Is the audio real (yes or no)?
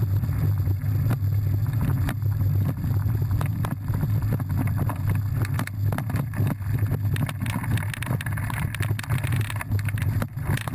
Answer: yes